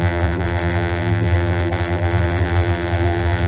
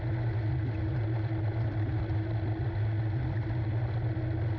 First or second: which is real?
second